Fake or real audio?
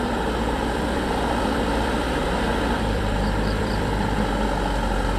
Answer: fake